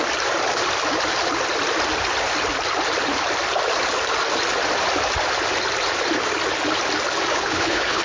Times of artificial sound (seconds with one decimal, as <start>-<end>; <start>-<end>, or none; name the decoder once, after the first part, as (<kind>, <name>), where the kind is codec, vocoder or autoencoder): 7.3-8.0 (codec, HILCodec)